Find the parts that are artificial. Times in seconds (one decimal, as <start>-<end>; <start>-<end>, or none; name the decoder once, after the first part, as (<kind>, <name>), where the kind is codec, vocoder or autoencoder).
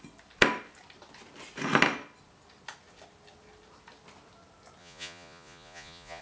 4.8-6.2 (vocoder, Vocos)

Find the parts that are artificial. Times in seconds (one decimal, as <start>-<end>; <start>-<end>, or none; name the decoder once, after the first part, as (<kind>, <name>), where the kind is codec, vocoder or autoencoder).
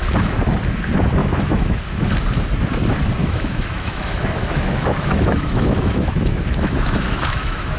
1.2-2.1 (autoencoder, DAC-VAE); 3.2-7.8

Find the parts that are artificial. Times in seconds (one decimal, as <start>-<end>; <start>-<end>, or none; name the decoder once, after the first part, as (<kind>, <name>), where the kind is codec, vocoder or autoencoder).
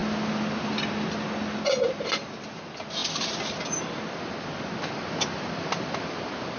none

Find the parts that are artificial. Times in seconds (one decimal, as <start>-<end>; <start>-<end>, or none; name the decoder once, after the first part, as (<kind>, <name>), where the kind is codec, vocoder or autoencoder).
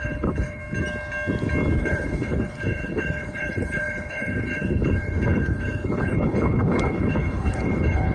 0.0-0.6 (codec, HILCodec); 1.8-8.1